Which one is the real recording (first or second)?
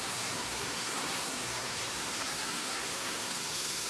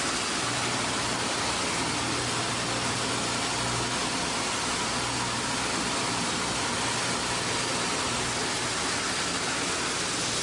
second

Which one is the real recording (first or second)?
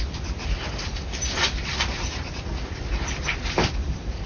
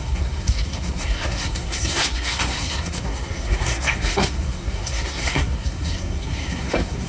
first